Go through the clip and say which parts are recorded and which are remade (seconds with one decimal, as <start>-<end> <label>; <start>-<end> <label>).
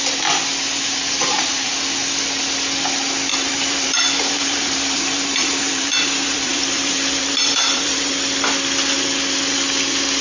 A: 0.0-0.7 recorded; 0.7-1.7 remade; 1.7-3.3 recorded; 3.3-8.1 remade; 8.1-10.2 recorded